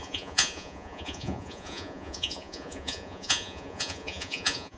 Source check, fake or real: fake